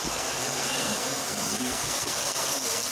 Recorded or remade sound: remade